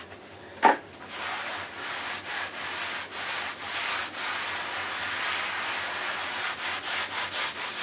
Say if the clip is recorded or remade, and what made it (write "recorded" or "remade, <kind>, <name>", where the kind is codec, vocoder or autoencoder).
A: recorded